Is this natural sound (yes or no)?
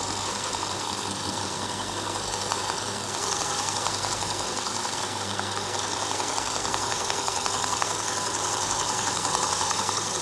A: no